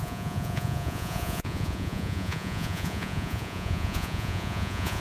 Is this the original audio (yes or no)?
no